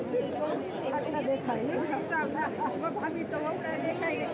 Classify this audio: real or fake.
real